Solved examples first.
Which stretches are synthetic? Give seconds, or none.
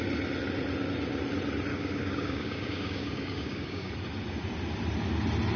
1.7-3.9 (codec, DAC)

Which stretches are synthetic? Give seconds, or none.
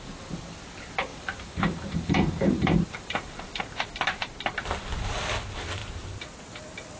1.1-3.6 (vocoder, BigVGAN v2)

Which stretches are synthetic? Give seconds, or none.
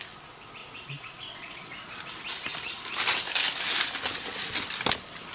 0.6-2.0 (vocoder, Vocos)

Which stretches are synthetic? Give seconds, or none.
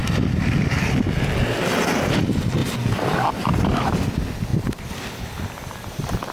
none